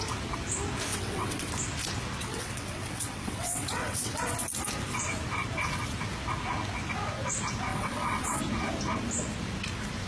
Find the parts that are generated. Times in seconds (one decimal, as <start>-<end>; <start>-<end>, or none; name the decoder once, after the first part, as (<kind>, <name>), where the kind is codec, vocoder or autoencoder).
0.9-1.5 (vocoder, WaveNeXt); 2.2-4.2; 7.7-8.4